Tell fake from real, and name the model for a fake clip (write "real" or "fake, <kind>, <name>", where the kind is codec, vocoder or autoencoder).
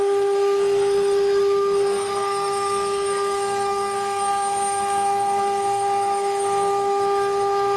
fake, codec, SNAC